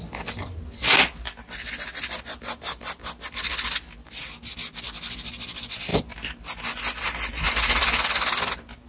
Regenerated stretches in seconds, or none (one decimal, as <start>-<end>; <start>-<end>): none